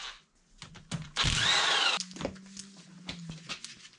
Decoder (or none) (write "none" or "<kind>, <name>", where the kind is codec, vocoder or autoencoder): none